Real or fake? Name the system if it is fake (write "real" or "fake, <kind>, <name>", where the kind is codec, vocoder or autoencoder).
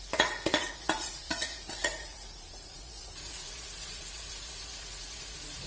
fake, vocoder, Vocos